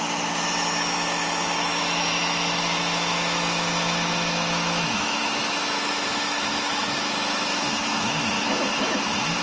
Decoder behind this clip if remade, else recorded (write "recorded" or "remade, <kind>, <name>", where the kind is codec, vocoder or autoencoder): remade, autoencoder, DAC-VAE